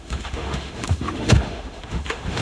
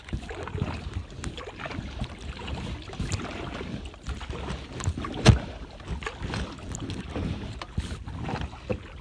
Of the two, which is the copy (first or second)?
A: first